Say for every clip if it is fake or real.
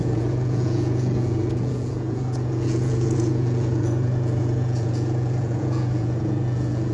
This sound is fake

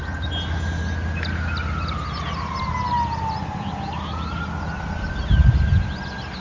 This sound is real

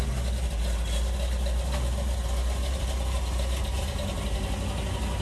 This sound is real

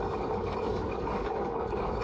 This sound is fake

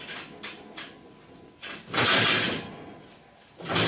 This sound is real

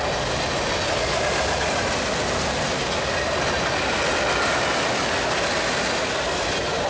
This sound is real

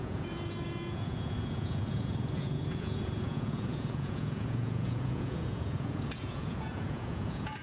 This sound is fake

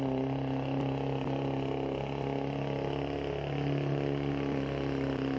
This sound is real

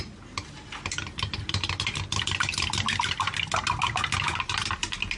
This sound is real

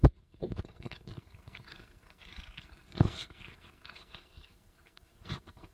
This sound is fake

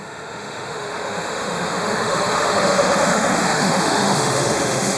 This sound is fake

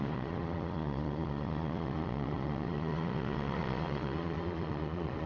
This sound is fake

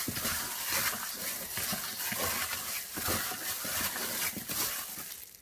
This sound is real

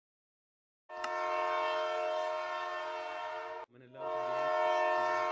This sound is real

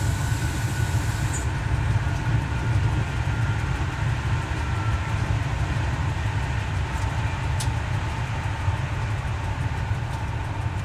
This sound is real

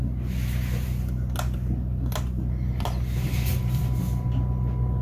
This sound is real